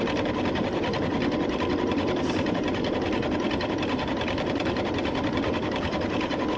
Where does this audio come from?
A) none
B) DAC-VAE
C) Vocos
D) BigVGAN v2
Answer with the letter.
A